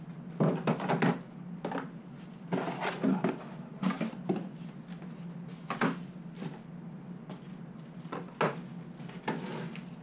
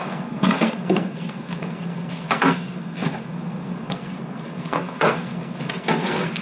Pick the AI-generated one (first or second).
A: second